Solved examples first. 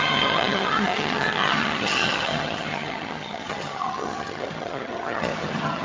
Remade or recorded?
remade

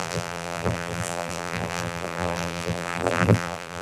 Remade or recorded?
remade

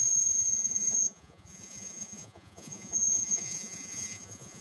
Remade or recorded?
remade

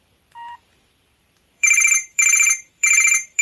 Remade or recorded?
remade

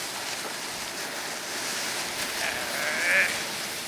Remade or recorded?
recorded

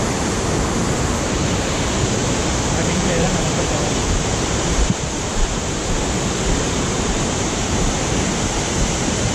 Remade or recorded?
remade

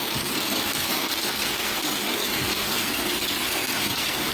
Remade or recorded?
remade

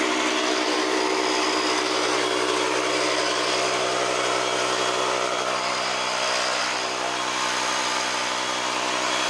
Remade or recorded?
recorded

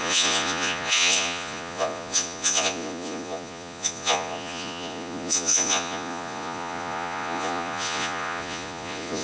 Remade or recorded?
remade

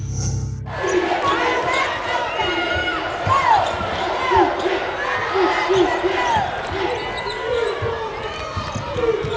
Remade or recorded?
recorded